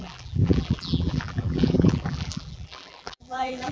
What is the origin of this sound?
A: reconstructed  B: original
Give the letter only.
A